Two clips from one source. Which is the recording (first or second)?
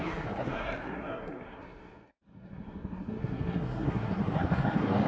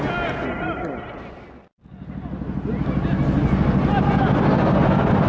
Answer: second